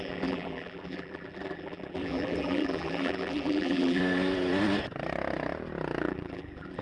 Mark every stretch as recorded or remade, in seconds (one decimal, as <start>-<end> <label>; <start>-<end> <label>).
0.0-4.0 remade; 4.0-6.0 recorded; 6.0-6.8 remade